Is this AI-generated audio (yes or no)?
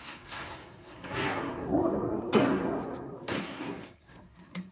yes